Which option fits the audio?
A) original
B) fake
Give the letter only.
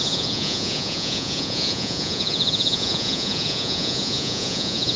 B